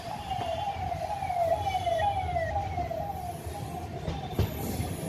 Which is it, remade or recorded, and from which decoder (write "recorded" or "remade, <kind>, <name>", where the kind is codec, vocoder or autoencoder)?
recorded